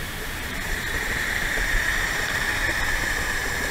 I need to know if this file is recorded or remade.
remade